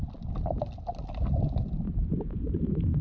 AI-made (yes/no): no